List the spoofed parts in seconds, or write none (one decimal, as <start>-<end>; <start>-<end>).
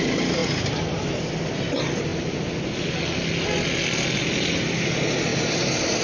none